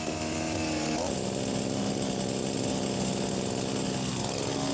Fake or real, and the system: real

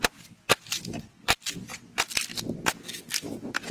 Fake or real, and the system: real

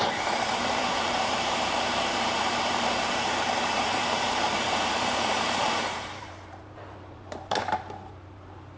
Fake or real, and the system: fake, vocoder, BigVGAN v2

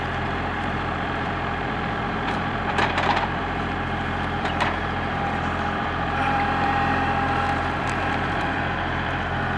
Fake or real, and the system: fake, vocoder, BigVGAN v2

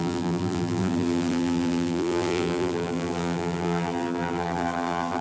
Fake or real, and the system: fake, vocoder, BigVGAN v2